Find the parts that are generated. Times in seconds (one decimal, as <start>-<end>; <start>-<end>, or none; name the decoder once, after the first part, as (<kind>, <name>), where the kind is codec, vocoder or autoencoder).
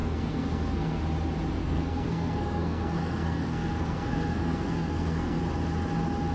0.0-1.0 (codec, SNAC); 1.6-5.4